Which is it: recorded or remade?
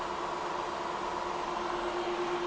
recorded